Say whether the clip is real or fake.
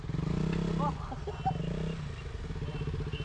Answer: real